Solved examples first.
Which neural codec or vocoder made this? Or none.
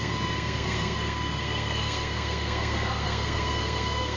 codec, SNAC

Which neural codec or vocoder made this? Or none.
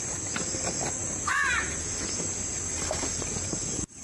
none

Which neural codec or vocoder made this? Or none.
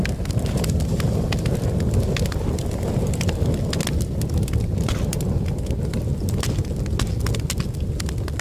none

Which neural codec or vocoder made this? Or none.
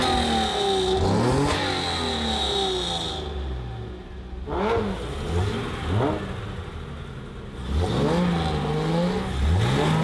none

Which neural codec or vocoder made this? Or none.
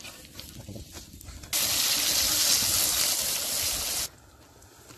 none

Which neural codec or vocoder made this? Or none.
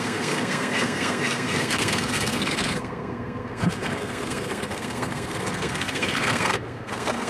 codec, SNAC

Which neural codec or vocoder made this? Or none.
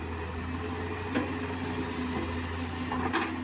none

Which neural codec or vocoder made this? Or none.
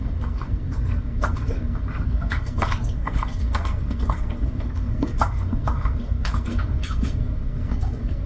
codec, SNAC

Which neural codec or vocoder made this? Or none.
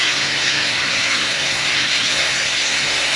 codec, SNAC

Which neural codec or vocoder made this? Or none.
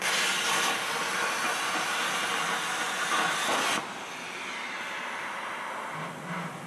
none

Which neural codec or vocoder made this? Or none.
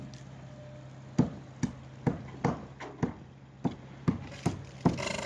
none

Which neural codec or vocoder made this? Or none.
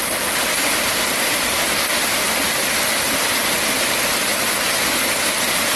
none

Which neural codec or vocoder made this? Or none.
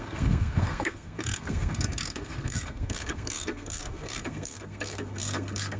codec, SNAC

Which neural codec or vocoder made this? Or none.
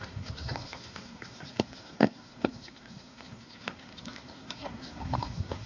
codec, SNAC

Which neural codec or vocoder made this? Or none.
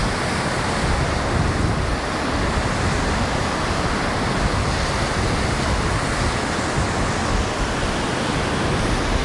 none